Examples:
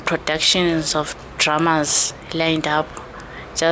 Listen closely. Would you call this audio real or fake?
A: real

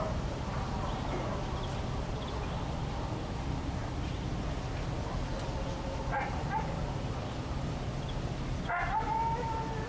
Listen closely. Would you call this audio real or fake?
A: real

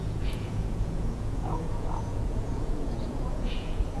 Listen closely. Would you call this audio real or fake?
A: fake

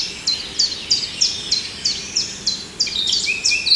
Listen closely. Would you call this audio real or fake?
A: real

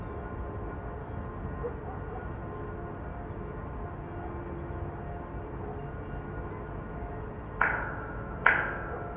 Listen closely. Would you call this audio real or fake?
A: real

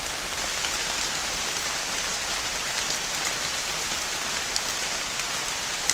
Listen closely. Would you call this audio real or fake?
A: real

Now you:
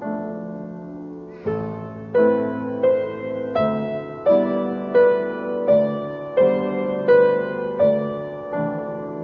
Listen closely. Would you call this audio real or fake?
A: real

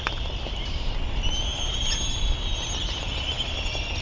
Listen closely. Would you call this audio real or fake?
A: real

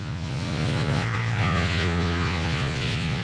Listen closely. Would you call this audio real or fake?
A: fake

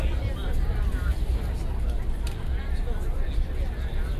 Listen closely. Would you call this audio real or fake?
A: real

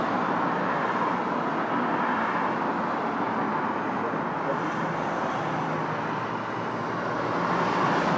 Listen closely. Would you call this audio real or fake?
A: real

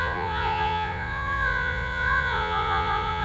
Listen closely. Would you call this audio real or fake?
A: fake